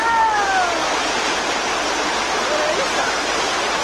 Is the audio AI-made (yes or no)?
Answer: no